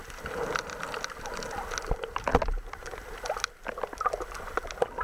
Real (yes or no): yes